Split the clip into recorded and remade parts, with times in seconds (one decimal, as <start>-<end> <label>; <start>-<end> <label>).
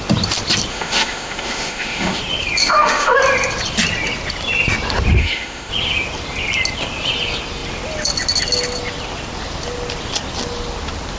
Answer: 0.0-0.7 recorded; 0.7-2.2 remade; 2.2-2.6 recorded; 2.6-3.2 remade; 3.2-5.2 recorded; 5.2-5.7 remade; 5.7-11.2 recorded